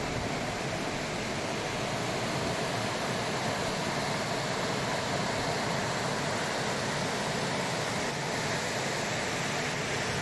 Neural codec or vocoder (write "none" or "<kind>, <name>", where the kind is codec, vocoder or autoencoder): none